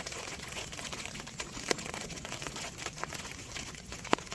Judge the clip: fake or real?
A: fake